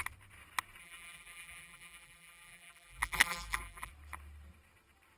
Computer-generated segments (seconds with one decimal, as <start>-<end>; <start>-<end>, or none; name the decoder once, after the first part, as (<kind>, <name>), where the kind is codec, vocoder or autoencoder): 0.8-3.9 (vocoder, BigVGAN v2)